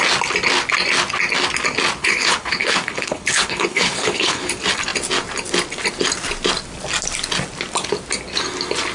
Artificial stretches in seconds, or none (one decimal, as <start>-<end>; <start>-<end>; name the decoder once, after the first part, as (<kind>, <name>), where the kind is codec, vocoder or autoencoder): 2.0-4.5 (codec, HILCodec)